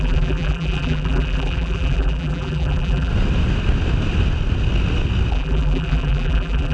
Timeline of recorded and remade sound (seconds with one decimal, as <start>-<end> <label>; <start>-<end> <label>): 0.0-3.1 remade; 3.1-5.3 recorded; 5.3-6.7 remade